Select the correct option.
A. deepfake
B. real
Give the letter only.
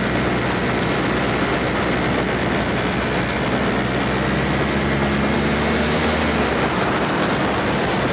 B